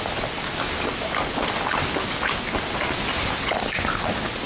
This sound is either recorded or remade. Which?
recorded